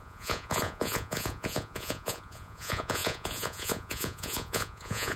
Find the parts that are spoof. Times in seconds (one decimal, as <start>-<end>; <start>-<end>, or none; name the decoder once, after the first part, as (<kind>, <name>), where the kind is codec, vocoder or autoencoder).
0.0-5.2 (vocoder, Vocos)